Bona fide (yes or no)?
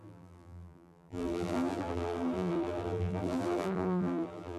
no